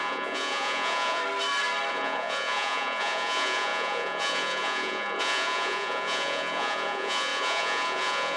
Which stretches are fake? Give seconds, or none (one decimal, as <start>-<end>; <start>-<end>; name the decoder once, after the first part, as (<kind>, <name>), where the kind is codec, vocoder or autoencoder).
0.0-1.2 (vocoder, Vocos); 1.9-8.4